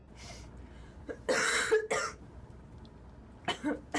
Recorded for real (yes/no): yes